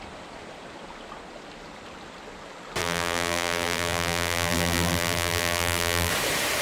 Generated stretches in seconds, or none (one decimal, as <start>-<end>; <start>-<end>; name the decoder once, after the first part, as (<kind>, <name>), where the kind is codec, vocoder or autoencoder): 2.8-6.1 (vocoder, BigVGAN v2)